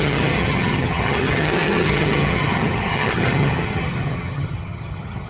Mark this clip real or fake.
fake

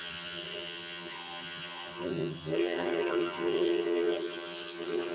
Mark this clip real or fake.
fake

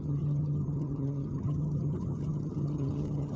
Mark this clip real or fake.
fake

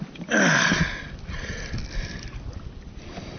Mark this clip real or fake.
real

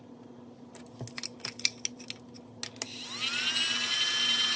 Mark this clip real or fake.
real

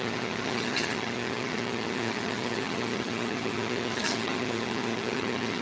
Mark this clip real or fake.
fake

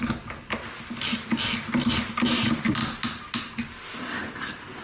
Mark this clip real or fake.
real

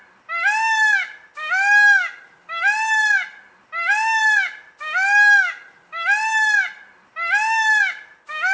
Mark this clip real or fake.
real